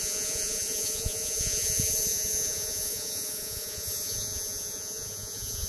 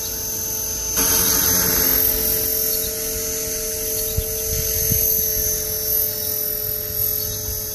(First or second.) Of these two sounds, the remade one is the first